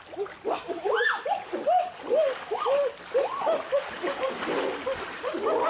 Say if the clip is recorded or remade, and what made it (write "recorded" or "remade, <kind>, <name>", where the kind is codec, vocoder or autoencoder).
recorded